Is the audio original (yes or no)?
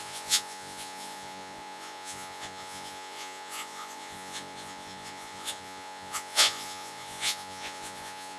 no